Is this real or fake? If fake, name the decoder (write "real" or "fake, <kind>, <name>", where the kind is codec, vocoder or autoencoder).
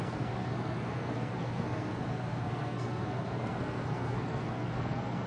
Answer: fake, codec, SNAC